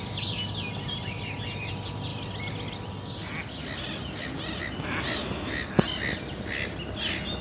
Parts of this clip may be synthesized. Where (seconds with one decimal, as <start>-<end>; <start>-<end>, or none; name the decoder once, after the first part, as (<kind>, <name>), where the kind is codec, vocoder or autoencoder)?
none